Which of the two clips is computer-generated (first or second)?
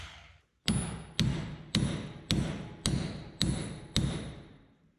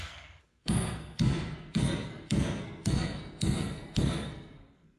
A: second